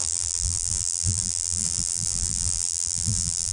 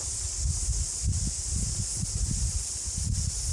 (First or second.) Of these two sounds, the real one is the second